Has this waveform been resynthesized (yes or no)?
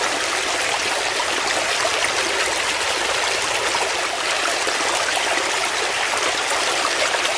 no